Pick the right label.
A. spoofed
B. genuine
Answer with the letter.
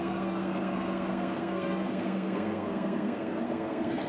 A